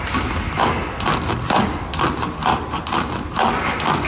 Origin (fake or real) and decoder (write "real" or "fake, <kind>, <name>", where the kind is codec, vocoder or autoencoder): real